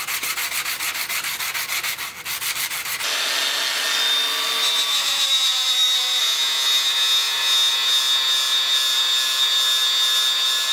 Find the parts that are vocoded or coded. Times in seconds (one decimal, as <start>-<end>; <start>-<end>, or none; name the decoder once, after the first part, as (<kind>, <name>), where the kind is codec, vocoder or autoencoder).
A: 4.9-6.2 (autoencoder, DAC-VAE)